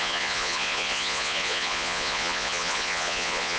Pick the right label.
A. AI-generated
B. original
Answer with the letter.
A